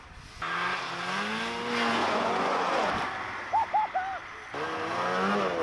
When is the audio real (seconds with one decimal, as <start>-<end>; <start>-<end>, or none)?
0.0-2.0; 2.9-5.6